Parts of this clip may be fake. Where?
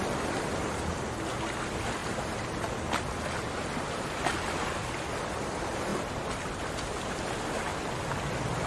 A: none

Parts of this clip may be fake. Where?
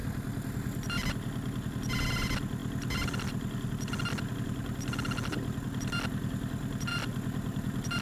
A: none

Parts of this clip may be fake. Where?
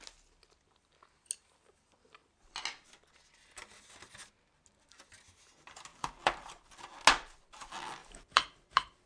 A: 5.9-6.9 (vocoder, BigVGAN v2); 8.0-8.7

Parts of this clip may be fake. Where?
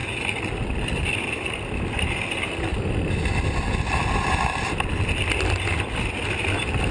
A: 2.7-6.9 (vocoder, BigVGAN v2)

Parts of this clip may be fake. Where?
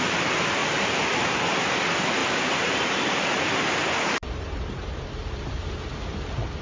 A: 2.2-5.7 (vocoder, BigVGAN v2)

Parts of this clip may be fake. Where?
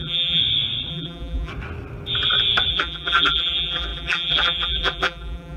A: 0.0-0.4 (vocoder, BigVGAN v2); 0.9-1.5; 2.7-5.6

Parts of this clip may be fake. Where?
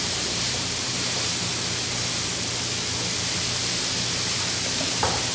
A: 0.0-1.5 (vocoder, BigVGAN v2); 4.7-5.3